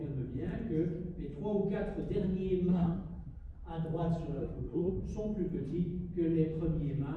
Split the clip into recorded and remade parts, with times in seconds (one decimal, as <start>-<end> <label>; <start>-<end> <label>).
0.0-2.7 recorded; 2.7-3.5 remade; 3.5-4.4 recorded; 4.4-5.0 remade; 5.0-7.2 recorded